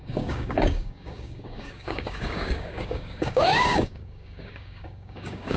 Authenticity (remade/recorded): remade